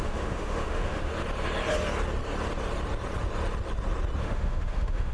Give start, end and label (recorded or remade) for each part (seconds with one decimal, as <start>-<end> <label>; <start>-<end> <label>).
0.0-1.1 remade; 1.1-4.2 recorded; 4.2-5.1 remade